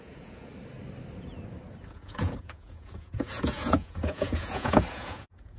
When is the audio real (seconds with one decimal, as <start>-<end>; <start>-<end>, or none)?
0.5-1.9